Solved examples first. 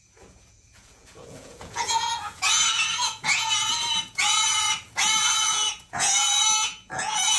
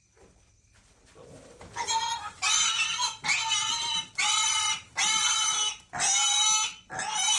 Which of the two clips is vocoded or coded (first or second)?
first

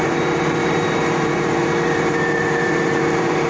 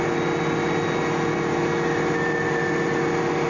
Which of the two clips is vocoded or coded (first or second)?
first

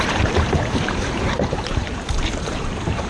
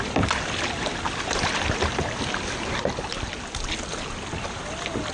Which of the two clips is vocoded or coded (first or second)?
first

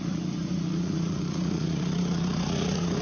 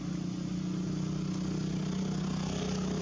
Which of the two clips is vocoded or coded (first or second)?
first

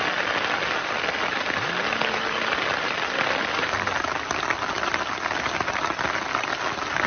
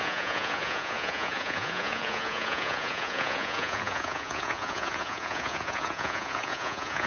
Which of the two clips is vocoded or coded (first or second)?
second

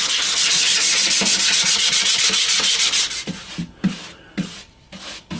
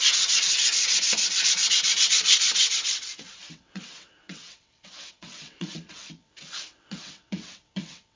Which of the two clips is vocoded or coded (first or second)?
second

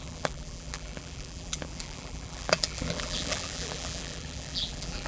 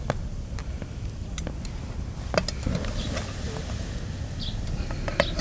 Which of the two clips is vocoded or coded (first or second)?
first